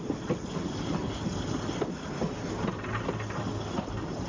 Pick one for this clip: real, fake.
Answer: real